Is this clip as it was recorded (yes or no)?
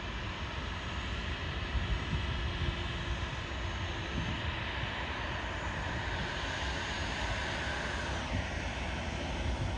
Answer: yes